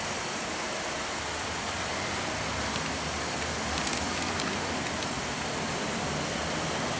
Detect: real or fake real